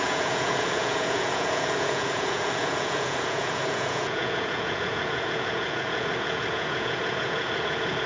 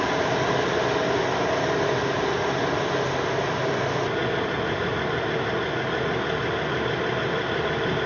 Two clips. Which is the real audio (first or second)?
second